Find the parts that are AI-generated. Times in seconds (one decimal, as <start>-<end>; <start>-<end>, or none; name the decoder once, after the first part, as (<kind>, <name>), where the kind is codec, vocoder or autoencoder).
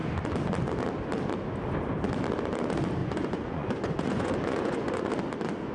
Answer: 3.0-5.1 (vocoder, Vocos)